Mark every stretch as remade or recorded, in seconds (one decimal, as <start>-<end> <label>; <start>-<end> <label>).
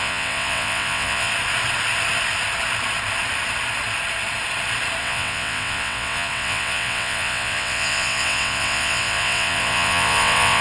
0.0-1.3 remade; 1.3-5.0 recorded; 5.0-10.6 remade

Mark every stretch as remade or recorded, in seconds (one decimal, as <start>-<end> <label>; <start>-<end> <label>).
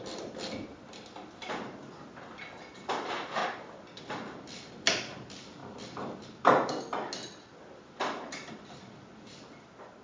0.0-10.0 recorded